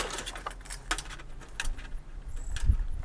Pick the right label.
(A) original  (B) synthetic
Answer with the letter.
A